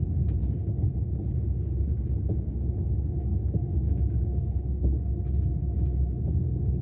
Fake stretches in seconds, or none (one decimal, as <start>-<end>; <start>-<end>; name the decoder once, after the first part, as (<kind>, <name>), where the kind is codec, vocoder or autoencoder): 3.3-4.4 (autoencoder, DAC-VAE)